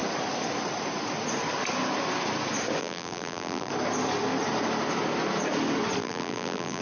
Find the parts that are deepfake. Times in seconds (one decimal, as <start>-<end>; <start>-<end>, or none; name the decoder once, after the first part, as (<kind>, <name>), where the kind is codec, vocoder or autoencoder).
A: 2.8-3.7 (vocoder, BigVGAN v2); 6.0-6.8